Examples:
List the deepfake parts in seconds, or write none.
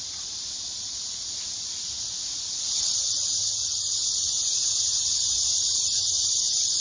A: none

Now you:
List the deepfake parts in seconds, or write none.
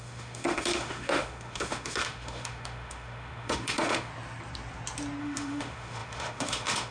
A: 0.0-4.1 (autoencoder, DAC-VAE); 5.2-6.9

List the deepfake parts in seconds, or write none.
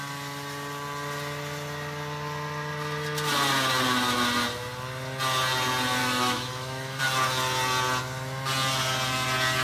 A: 6.0-7.0 (autoencoder, DAC-VAE)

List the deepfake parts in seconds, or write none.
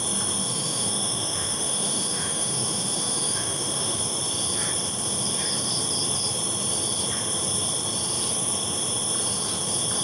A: 0.4-4.0 (autoencoder, DAC-VAE)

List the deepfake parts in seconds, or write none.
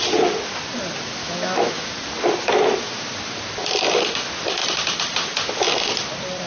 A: 1.2-1.9 (autoencoder, DAC-VAE)